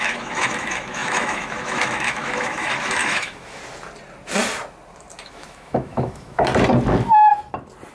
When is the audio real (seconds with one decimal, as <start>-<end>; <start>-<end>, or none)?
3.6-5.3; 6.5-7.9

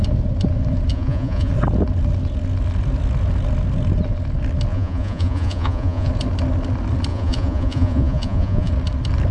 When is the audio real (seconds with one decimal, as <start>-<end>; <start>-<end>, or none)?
0.0-0.9; 1.5-4.7; 6.1-7.1; 8.7-9.3

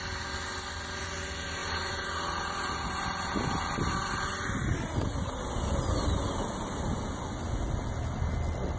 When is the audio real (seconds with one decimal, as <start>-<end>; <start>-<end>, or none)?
0.0-8.8